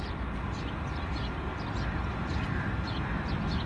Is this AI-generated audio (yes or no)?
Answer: no